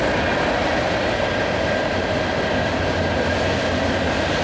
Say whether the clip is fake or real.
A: real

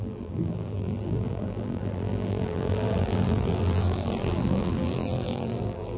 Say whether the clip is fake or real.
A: fake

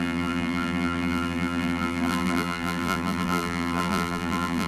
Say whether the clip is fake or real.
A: fake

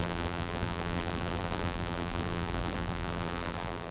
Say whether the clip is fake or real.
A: fake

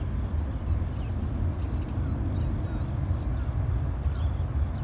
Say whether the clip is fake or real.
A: real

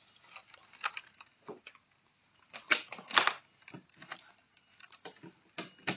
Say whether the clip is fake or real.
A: real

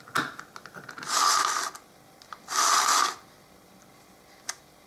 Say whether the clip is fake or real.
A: real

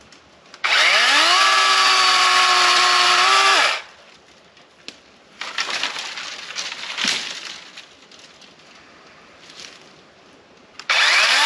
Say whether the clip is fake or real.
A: real